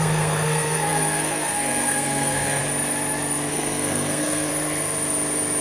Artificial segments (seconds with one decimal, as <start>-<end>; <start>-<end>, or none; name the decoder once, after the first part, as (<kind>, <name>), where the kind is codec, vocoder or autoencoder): 0.0-2.6 (codec, SNAC); 3.5-4.5